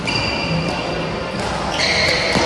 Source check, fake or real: real